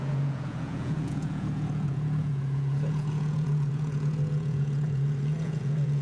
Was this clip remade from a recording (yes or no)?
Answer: yes